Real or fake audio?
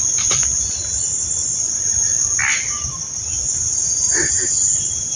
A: real